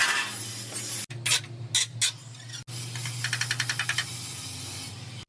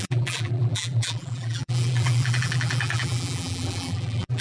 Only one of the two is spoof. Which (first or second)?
second